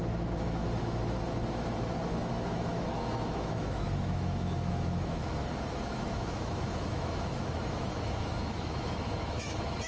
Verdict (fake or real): fake